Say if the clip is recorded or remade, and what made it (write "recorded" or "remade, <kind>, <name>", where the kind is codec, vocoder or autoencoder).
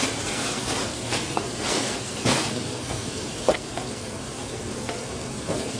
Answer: remade, codec, SNAC